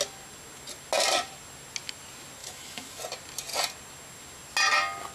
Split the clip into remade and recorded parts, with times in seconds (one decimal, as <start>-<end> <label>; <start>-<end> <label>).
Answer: 0.0-2.4 recorded; 2.4-3.0 remade; 3.0-5.1 recorded